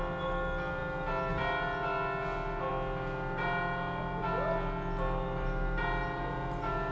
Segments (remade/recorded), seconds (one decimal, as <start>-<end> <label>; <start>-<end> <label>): 0.0-6.9 recorded